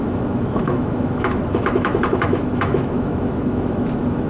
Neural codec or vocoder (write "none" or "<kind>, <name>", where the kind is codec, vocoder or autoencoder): autoencoder, DAC-VAE